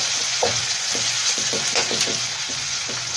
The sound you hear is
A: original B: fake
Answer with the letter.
B